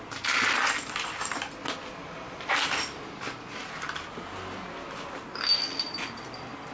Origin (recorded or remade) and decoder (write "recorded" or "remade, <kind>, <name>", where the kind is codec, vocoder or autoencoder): recorded